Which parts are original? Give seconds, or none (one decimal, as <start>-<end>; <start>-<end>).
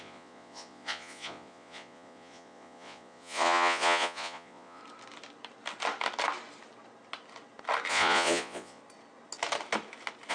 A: 4.8-7.9; 8.8-10.3